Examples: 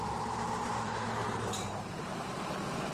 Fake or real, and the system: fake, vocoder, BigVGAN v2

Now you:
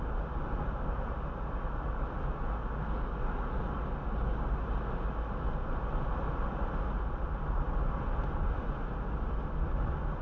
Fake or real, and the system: real